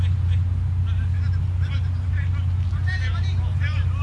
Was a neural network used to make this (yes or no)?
no